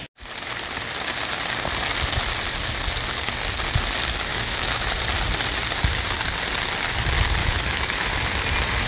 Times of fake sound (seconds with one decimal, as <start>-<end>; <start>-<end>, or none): 4.3-4.9; 7.4-8.1